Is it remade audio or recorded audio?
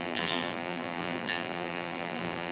remade